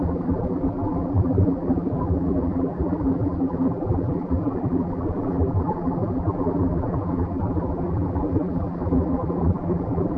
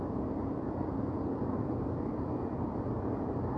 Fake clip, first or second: first